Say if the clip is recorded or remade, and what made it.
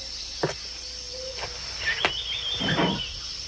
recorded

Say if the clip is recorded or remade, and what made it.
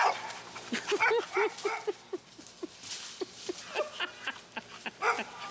recorded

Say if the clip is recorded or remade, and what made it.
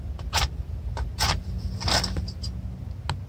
recorded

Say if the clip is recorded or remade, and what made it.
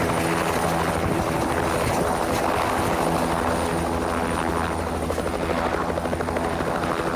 recorded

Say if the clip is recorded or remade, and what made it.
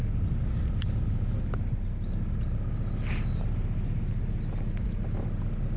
recorded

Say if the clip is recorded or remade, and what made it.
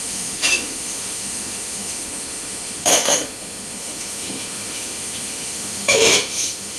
remade, autoencoder, DAC-VAE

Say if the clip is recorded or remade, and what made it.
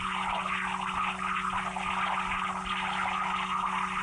recorded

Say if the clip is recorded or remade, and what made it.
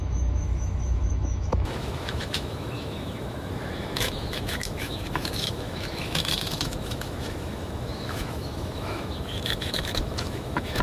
remade, autoencoder, DAC-VAE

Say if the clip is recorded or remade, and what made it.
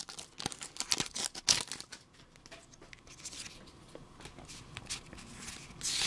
recorded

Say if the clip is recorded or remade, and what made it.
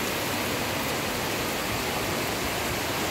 recorded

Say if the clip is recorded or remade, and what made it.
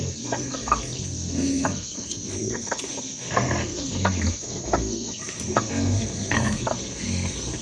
remade, codec, SNAC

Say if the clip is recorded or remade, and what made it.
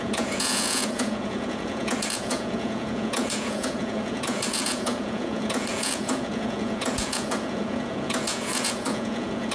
remade, vocoder, Vocos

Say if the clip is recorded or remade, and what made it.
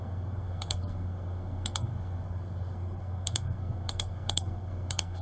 remade, codec, SNAC